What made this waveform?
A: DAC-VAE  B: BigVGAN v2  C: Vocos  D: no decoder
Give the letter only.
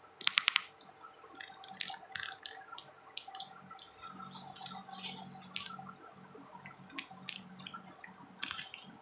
D